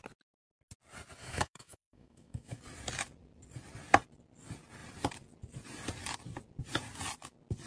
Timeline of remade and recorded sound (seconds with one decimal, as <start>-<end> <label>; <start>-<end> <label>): 0.0-1.2 recorded; 1.2-2.6 remade; 2.6-7.7 recorded